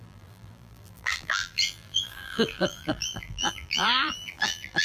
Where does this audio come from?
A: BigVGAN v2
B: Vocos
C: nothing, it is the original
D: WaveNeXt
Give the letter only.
A